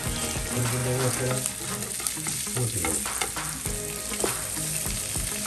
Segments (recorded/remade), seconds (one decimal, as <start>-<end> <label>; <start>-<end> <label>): 0.0-5.5 recorded